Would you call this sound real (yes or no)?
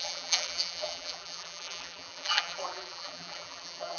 no